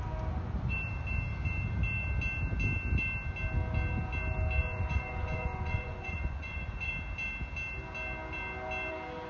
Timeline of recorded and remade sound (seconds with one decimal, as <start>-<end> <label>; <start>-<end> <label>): 0.0-4.6 recorded; 4.6-6.9 remade; 6.9-9.3 recorded